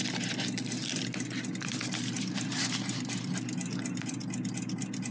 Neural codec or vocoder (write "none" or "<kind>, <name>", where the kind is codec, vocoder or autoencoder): none